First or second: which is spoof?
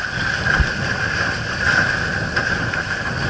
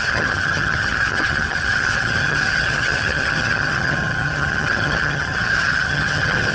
second